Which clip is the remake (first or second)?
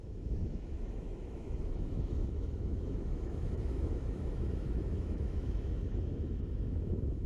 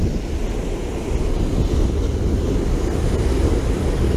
first